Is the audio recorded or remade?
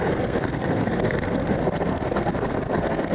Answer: remade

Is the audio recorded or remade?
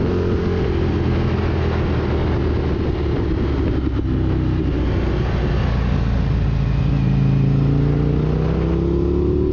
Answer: recorded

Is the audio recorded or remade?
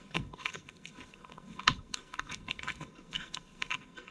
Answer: remade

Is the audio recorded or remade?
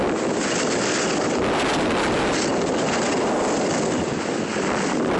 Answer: recorded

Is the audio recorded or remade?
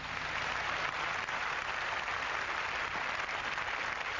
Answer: recorded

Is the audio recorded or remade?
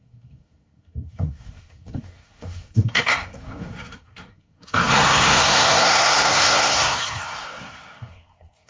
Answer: remade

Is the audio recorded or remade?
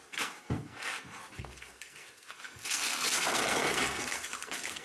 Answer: remade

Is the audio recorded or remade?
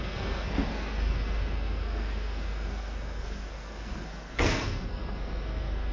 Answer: remade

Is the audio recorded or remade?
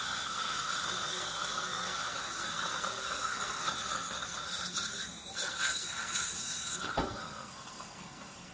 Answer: remade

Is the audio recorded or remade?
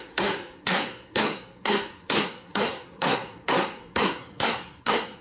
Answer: remade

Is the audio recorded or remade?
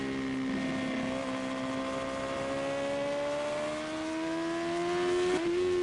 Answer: recorded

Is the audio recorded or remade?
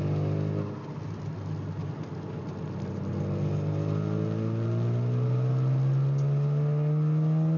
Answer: recorded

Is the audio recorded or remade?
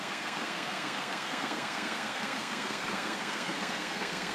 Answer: remade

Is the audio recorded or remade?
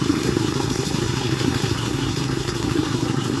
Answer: remade